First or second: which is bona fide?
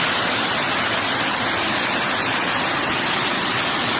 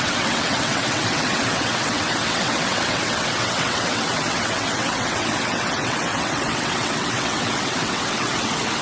first